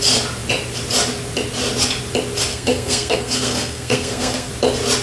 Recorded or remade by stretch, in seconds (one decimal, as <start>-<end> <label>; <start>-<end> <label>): 0.0-2.5 recorded; 2.5-4.5 remade; 4.5-5.0 recorded